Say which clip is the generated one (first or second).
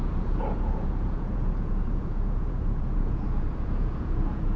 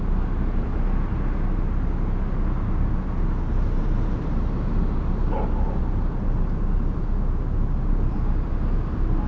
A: first